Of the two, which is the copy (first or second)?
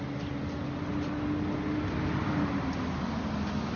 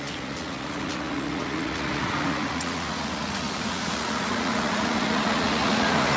second